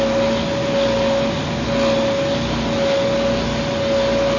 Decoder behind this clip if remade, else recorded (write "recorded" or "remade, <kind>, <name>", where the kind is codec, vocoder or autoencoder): recorded